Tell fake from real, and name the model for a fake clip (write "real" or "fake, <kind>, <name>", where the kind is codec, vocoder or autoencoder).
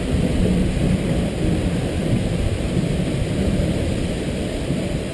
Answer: fake, vocoder, BigVGAN v2